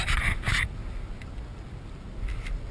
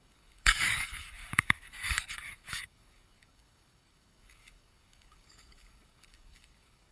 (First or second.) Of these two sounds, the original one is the first